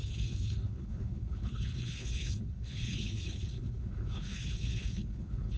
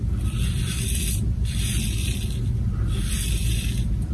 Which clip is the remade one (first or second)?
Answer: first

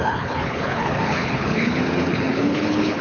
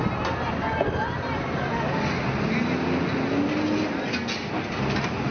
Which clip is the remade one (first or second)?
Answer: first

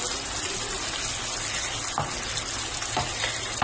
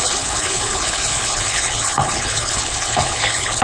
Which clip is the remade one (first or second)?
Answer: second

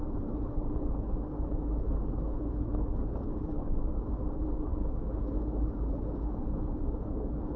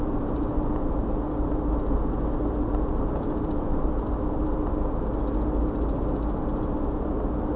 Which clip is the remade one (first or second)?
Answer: first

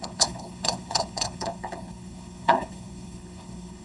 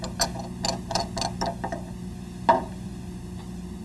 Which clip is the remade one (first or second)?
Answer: first